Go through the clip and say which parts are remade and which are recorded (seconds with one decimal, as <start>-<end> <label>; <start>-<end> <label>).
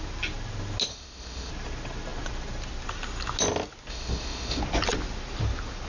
0.0-0.9 recorded; 0.9-1.5 remade; 1.5-3.9 recorded; 3.9-4.6 remade; 4.6-5.9 recorded